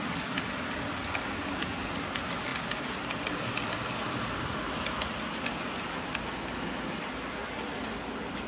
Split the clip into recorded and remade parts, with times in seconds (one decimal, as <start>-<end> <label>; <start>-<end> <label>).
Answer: 0.0-8.5 recorded